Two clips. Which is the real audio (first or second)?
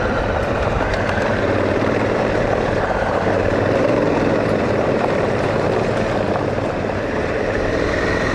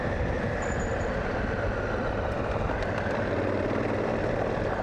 second